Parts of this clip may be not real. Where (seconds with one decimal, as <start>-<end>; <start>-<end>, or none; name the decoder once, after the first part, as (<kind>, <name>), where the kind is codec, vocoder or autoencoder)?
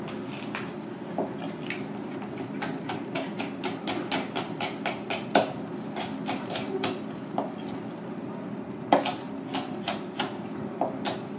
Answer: none